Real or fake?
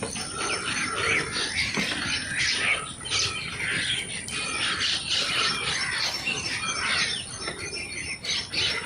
real